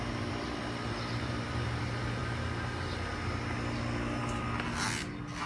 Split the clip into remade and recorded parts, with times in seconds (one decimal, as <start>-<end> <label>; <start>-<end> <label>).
0.0-2.2 remade; 2.2-5.5 recorded